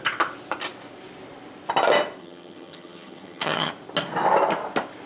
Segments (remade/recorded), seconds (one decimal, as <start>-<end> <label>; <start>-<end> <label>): 0.0-2.2 recorded; 2.2-3.7 remade; 3.7-5.1 recorded